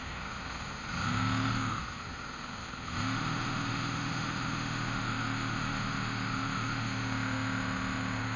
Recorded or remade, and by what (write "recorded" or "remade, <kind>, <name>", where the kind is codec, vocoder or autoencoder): remade, autoencoder, DAC-VAE